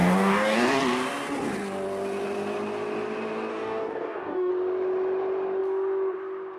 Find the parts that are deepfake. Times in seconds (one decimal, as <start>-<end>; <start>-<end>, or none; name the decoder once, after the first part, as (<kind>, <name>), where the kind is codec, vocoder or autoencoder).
0.0-0.8 (codec, DAC); 3.5-4.5